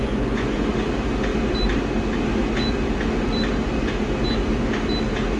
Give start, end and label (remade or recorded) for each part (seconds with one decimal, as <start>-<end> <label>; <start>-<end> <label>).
0.0-0.7 remade; 0.7-5.4 recorded